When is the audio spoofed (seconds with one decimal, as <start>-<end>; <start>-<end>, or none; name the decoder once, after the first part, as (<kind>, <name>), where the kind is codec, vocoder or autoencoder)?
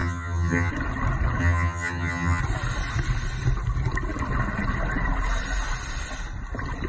0.0-0.7 (vocoder, HiFi-GAN); 1.4-2.4